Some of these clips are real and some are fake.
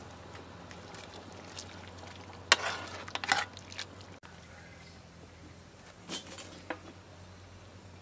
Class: real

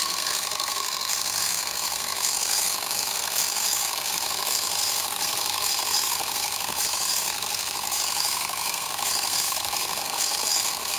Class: fake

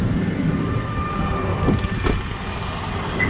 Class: real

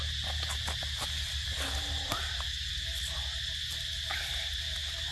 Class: real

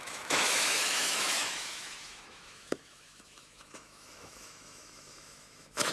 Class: fake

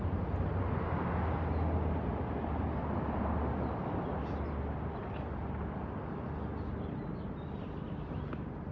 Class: real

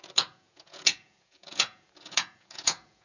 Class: fake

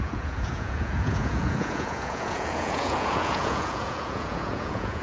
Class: fake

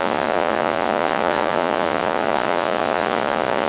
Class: fake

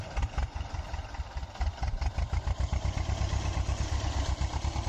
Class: fake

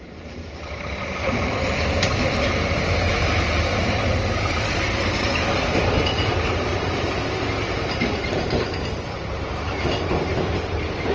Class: fake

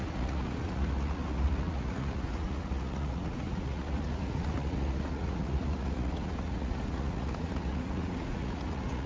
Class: fake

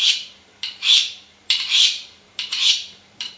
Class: fake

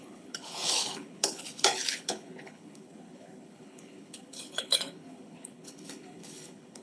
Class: fake